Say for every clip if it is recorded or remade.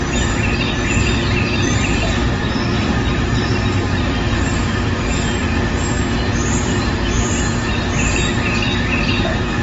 remade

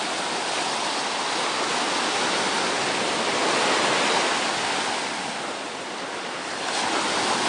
recorded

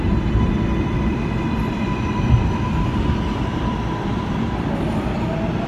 remade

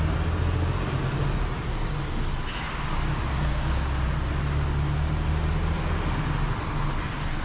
recorded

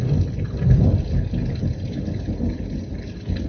recorded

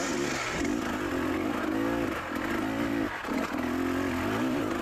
recorded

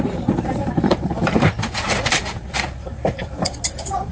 remade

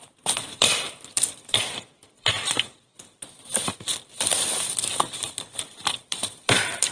remade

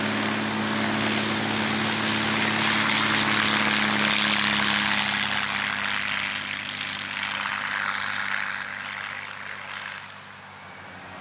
recorded